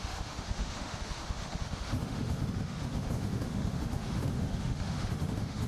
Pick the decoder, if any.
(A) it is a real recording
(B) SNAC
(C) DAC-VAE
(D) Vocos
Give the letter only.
C